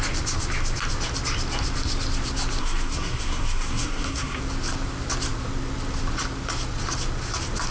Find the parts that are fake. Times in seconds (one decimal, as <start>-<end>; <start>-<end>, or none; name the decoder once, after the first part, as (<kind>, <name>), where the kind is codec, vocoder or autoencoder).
2.6-4.4 (codec, SNAC)